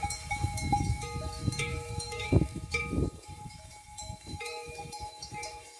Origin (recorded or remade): remade